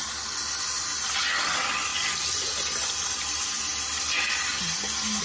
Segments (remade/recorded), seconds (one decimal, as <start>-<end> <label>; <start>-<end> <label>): 0.0-5.2 recorded